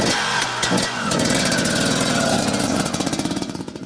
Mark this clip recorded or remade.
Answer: remade